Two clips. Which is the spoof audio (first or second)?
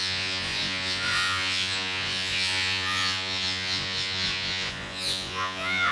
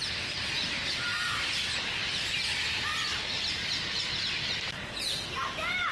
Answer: first